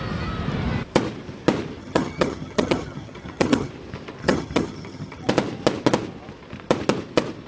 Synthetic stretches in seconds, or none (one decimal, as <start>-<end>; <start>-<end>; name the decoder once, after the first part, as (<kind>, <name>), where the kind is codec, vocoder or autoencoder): 1.8-3.7 (vocoder, HiFi-GAN); 4.2-5.3